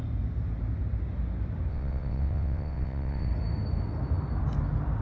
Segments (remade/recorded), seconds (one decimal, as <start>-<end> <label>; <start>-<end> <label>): 0.0-1.7 recorded; 1.7-3.3 remade; 3.3-5.0 recorded

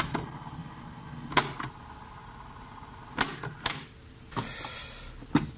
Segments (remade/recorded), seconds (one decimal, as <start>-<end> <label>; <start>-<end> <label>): 0.0-2.2 recorded; 2.2-3.0 remade; 3.0-5.6 recorded

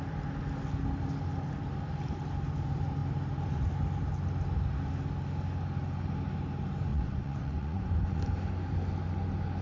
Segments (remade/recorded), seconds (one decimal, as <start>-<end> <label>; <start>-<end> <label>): 0.0-6.9 recorded; 6.9-8.2 remade; 8.2-9.6 recorded

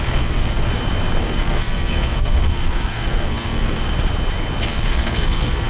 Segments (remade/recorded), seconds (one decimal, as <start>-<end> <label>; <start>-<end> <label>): 0.0-0.7 remade; 0.7-1.2 recorded; 1.2-3.9 remade; 3.9-4.6 recorded; 4.6-5.7 remade

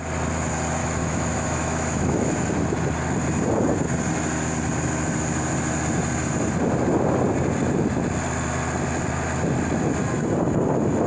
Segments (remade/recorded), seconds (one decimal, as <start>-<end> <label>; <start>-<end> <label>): 0.0-0.8 recorded; 0.8-2.3 remade; 2.3-11.1 recorded